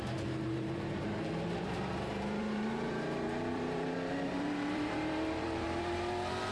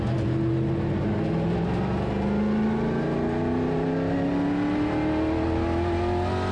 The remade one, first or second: first